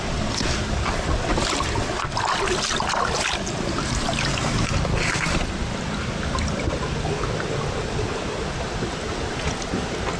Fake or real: real